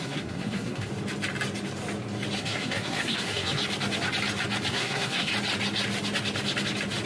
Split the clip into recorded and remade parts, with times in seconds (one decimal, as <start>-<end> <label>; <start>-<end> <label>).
0.0-0.9 remade; 0.9-2.4 recorded; 2.4-3.6 remade; 3.6-4.7 recorded; 4.7-5.3 remade; 5.3-7.1 recorded